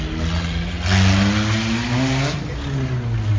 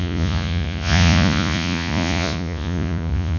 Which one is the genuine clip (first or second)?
first